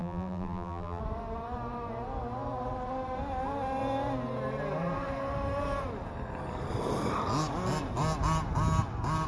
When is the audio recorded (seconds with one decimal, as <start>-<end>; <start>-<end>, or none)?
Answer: 1.0-9.3